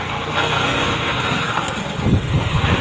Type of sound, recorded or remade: remade